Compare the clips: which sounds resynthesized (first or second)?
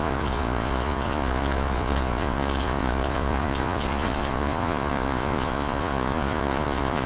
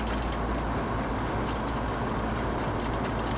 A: first